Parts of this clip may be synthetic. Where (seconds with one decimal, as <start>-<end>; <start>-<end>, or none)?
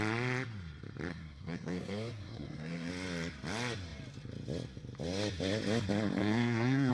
1.1-2.9; 6.2-6.9